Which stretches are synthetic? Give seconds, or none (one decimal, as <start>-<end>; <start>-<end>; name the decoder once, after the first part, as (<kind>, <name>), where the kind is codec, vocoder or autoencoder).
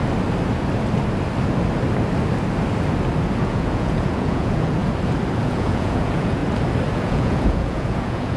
3.4-4.8 (vocoder, Vocos); 5.4-6.4; 6.9-8.4